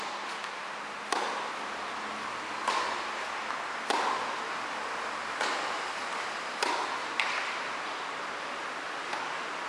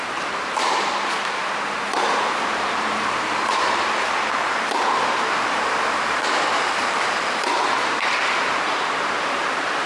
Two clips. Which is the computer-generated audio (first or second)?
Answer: second